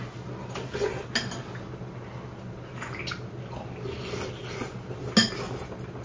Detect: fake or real real